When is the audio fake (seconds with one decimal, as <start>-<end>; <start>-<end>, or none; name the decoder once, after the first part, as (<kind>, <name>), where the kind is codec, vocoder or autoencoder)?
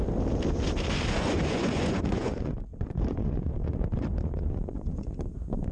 1.1-5.7 (vocoder, Vocos)